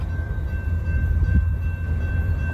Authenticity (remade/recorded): remade